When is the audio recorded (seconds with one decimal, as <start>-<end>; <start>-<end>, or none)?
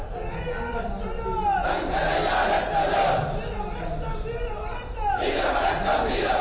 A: 0.0-6.4